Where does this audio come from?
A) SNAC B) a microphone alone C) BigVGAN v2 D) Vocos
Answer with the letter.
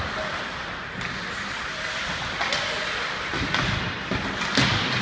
B